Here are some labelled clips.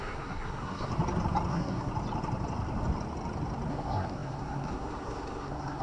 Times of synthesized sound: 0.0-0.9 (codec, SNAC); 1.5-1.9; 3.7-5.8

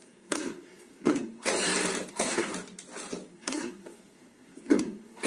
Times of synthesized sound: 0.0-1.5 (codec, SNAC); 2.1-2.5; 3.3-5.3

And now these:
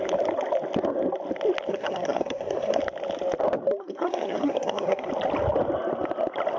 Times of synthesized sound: 1.7-2.8 (codec, SNAC); 3.8-5.1

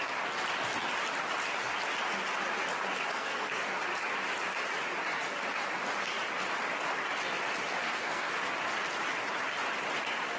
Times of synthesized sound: 3.1-3.8 (codec, SNAC); 7.8-8.3

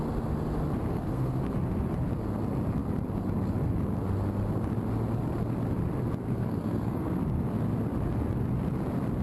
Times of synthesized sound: 0.9-1.4 (codec, SNAC); 6.2-7.2